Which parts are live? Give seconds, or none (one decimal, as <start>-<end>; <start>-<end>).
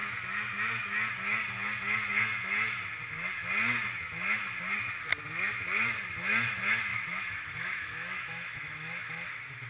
0.0-6.9